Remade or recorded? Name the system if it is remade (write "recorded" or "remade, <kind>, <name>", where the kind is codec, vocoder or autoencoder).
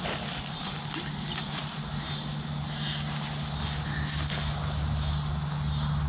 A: recorded